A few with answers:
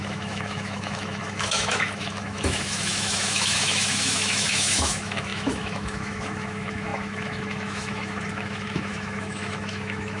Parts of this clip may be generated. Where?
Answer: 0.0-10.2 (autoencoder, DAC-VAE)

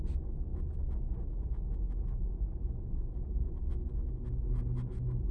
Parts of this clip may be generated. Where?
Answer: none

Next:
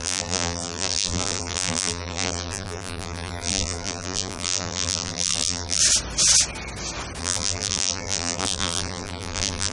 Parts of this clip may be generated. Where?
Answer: 0.0-5.8 (vocoder, BigVGAN v2); 7.2-9.7

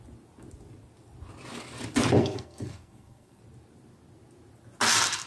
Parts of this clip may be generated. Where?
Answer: 2.2-3.4 (codec, SNAC)

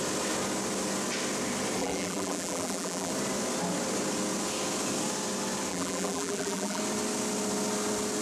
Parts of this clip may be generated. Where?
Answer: 1.8-3.1 (vocoder, BigVGAN v2); 5.7-6.8